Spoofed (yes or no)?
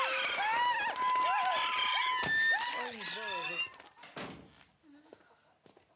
no